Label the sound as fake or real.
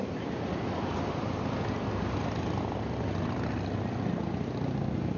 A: real